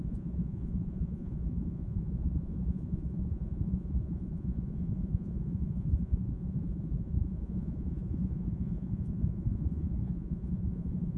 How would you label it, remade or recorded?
remade